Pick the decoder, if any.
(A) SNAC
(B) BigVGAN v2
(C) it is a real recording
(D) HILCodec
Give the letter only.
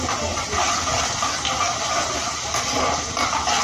C